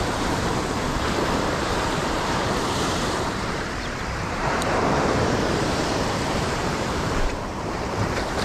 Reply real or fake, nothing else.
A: fake